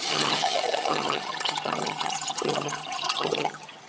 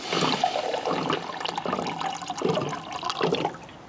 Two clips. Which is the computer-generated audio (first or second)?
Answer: first